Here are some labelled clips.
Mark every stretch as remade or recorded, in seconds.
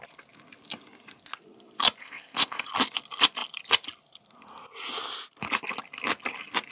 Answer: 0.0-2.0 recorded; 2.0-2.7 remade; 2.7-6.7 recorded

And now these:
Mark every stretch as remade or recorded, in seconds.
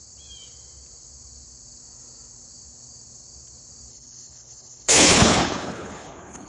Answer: 0.0-3.9 recorded; 3.9-6.5 remade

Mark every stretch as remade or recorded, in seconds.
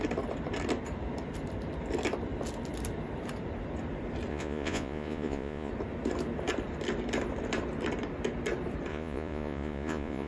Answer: 0.0-4.3 recorded; 4.3-5.7 remade; 5.7-8.9 recorded; 8.9-10.3 remade